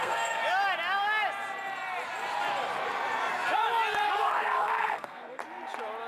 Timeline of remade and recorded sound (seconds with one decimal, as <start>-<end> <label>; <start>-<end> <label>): 0.0-0.4 remade; 0.4-4.1 recorded; 4.1-5.4 remade; 5.4-6.1 recorded